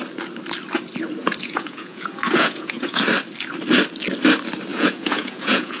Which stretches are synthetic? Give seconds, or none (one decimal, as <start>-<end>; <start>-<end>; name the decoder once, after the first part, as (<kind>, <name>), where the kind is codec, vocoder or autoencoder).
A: 1.2-3.0 (vocoder, Vocos); 4.7-5.8

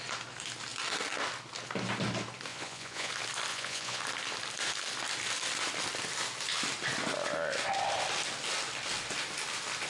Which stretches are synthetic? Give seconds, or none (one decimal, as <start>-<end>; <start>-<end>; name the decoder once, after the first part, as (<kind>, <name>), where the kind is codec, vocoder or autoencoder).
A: 2.5-3.1 (vocoder, Vocos); 3.5-4.0

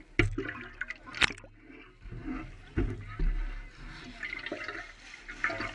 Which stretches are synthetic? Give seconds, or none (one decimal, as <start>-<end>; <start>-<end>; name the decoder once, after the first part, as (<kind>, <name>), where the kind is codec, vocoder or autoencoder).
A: none

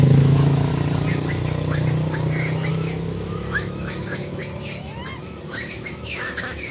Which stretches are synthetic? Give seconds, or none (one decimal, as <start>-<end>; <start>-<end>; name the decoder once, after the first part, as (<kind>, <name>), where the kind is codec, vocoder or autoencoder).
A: 0.0-0.7 (autoencoder, DAC-VAE); 2.7-4.4; 5.2-6.7